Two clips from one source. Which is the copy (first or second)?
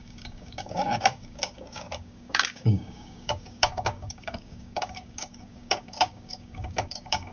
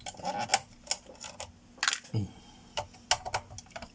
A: first